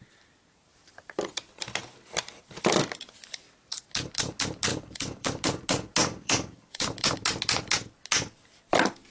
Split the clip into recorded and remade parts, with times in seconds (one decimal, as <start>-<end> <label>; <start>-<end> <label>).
0.0-0.7 recorded; 0.7-3.8 remade; 3.8-4.7 recorded; 4.7-5.4 remade; 5.4-6.0 recorded; 6.0-7.1 remade; 7.1-9.1 recorded